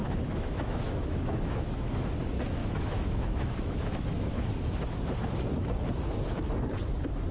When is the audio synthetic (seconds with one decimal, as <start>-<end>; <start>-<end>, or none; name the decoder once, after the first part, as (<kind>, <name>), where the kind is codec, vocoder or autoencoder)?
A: 0.0-2.1 (autoencoder, DAC-VAE); 2.6-5.0